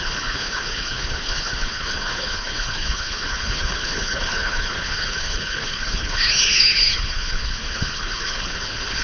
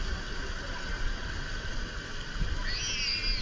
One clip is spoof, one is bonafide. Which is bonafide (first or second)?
second